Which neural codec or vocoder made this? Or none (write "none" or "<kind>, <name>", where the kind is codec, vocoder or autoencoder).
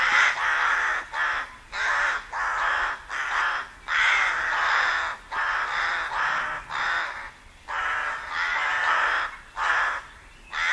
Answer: none